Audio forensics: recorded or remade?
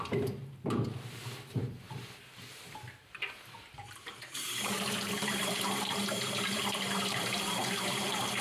remade